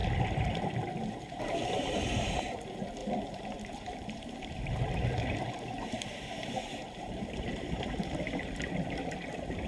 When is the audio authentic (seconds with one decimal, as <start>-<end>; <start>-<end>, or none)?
0.0-0.5